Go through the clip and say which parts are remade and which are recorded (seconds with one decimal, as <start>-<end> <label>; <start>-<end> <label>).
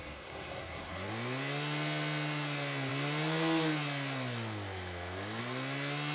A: 0.0-1.1 remade; 1.1-6.1 recorded